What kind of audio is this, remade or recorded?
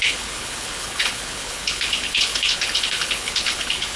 remade